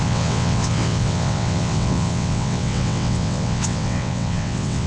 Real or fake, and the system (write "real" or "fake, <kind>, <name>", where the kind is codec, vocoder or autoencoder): fake, vocoder, WaveNeXt